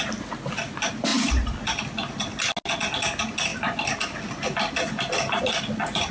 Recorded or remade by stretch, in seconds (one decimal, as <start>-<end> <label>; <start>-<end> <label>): 0.0-6.1 recorded